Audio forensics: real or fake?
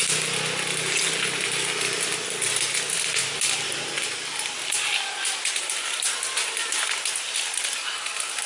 real